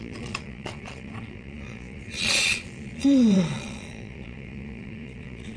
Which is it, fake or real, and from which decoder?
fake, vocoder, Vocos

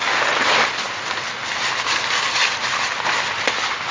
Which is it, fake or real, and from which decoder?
real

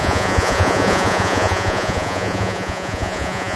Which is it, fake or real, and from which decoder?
fake, vocoder, Vocos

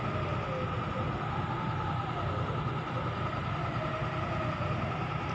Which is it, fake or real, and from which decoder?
real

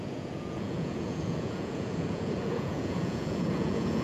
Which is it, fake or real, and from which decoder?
fake, vocoder, Vocos